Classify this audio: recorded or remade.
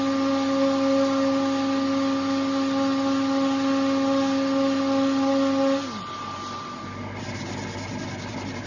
recorded